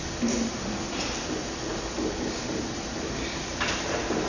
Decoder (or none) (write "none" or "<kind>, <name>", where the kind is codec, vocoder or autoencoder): none